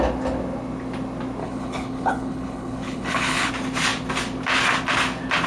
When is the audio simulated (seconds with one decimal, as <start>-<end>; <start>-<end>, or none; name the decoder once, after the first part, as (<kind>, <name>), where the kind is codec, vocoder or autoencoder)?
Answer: 1.4-3.5 (codec, HILCodec)